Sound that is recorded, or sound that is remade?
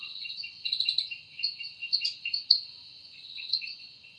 remade